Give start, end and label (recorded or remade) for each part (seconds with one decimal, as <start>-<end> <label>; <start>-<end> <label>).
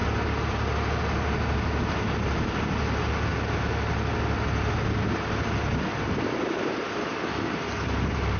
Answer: 0.0-8.4 recorded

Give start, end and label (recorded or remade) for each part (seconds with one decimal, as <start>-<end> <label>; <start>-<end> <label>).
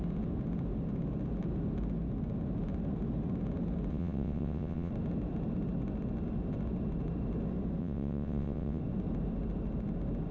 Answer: 0.0-3.9 recorded; 3.9-4.9 remade; 4.9-7.8 recorded; 7.8-8.8 remade; 8.8-10.3 recorded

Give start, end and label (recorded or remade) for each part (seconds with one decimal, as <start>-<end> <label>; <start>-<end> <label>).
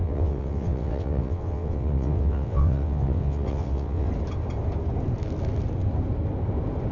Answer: 0.0-4.1 remade; 4.1-6.9 recorded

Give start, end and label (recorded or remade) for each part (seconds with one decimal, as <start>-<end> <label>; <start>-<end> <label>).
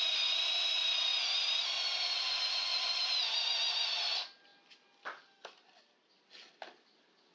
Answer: 0.0-7.3 recorded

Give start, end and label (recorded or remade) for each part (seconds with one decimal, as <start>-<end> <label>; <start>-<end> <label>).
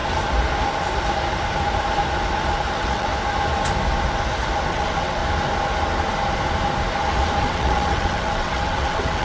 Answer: 0.0-2.7 recorded; 2.7-3.1 remade; 3.1-4.7 recorded; 4.7-5.2 remade; 5.2-7.4 recorded; 7.4-9.2 remade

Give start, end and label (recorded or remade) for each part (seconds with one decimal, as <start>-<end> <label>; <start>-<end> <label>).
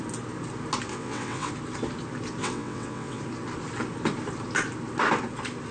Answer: 0.0-0.9 recorded; 0.9-1.5 remade; 1.5-2.4 recorded; 2.4-3.2 remade; 3.2-5.7 recorded